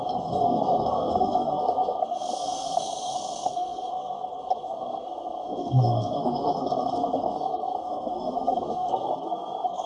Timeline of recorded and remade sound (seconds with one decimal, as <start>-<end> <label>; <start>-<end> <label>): 0.0-9.9 remade